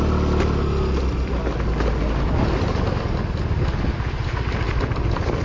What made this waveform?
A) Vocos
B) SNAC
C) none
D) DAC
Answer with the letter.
C